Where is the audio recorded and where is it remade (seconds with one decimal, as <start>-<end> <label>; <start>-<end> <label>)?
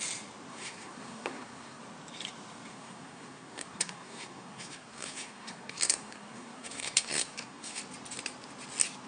0.0-0.5 recorded; 0.5-1.8 remade; 1.8-2.7 recorded; 2.7-7.8 remade; 7.8-9.1 recorded